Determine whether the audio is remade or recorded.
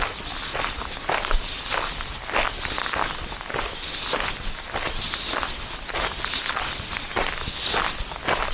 recorded